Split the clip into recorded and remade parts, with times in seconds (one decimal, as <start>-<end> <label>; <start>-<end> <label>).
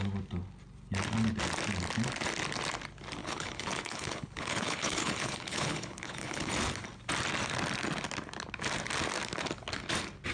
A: 0.0-3.2 recorded; 3.2-6.5 remade; 6.5-10.3 recorded